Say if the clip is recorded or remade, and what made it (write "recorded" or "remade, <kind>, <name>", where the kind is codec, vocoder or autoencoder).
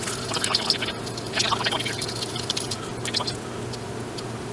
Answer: recorded